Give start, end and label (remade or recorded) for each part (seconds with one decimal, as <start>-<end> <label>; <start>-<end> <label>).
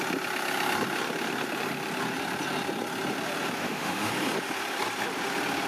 0.0-3.6 recorded; 3.6-4.1 remade; 4.1-5.7 recorded